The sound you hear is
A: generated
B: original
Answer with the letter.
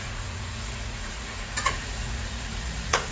A